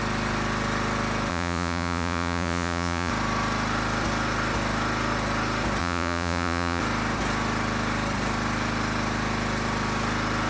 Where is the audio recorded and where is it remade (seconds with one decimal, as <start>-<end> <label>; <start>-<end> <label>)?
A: 0.0-1.3 recorded; 1.3-3.1 remade; 3.1-5.8 recorded; 5.8-6.8 remade; 6.8-10.5 recorded